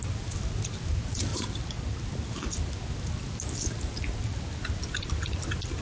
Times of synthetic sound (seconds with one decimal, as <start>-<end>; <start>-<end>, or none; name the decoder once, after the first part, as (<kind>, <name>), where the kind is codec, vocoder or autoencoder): none

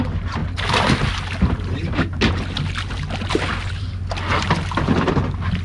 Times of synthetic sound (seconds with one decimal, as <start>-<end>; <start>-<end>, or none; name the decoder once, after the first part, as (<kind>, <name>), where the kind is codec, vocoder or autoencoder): 4.3-5.1 (vocoder, BigVGAN v2)

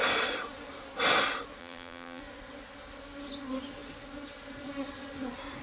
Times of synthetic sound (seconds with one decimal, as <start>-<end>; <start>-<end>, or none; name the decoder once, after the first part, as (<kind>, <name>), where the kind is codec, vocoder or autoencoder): 1.6-2.2 (vocoder, BigVGAN v2)

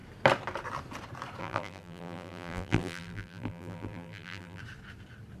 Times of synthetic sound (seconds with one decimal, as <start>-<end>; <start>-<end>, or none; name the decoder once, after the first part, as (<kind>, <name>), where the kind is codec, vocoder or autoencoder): 1.4-4.6 (vocoder, BigVGAN v2)

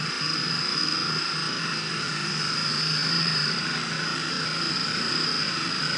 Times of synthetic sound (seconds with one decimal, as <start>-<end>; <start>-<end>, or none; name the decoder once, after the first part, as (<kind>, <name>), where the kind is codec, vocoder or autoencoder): 0.0-0.8 (vocoder, BigVGAN v2); 1.9-6.0

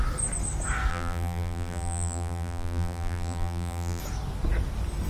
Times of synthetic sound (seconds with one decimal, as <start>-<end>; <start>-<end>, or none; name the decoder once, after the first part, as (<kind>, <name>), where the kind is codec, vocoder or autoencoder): 0.9-4.0 (vocoder, BigVGAN v2)

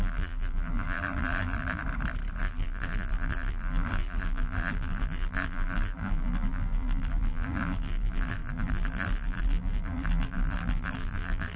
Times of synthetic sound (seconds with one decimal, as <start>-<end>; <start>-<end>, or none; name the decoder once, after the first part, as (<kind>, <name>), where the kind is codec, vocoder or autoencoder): 0.0-1.8 (vocoder, BigVGAN v2); 2.4-11.6